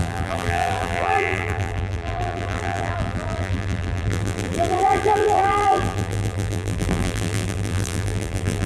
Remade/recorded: remade